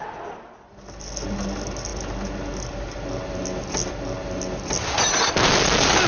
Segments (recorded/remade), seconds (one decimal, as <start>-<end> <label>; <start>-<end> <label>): 0.0-6.1 recorded